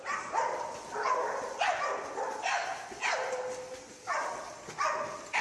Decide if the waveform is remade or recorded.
recorded